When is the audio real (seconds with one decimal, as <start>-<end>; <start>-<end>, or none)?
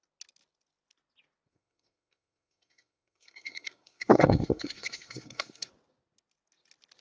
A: 0.0-1.5; 5.7-7.0